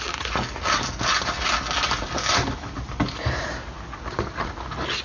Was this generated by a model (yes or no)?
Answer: no